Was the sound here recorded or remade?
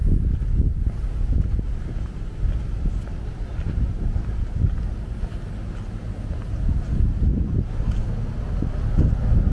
recorded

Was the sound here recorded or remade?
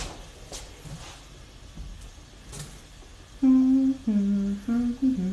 recorded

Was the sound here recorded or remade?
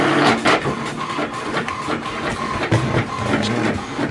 recorded